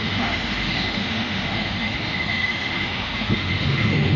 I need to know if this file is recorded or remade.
remade